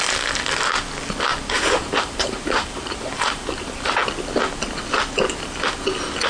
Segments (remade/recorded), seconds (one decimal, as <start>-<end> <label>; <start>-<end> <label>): 0.0-1.3 recorded; 1.3-3.9 remade; 3.9-6.3 recorded